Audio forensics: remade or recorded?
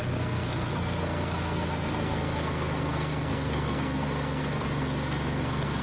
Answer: remade